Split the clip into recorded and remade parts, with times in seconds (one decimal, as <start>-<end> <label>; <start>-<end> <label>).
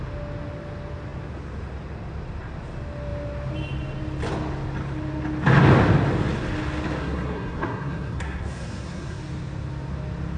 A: 0.0-7.0 recorded; 7.0-9.2 remade; 9.2-10.4 recorded